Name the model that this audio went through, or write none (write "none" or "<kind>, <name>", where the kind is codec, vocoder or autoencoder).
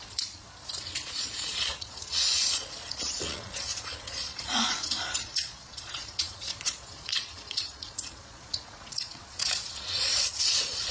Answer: vocoder, Vocos